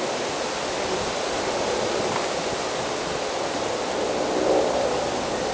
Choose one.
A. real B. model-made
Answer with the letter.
A